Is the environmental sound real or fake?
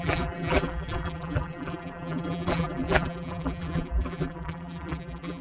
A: fake